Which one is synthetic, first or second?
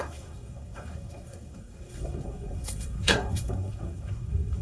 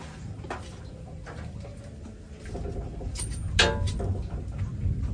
first